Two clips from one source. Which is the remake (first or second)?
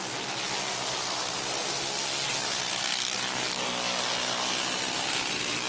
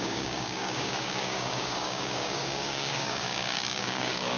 second